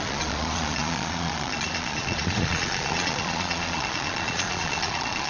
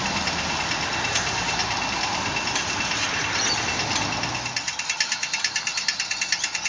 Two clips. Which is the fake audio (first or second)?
first